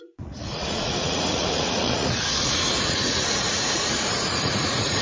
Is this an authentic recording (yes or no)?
no